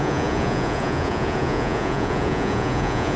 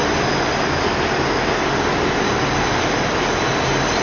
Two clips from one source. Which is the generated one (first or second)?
first